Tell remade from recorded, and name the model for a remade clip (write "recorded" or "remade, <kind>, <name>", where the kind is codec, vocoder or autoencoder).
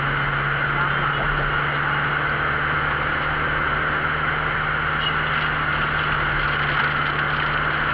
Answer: recorded